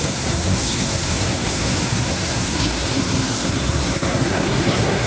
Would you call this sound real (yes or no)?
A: no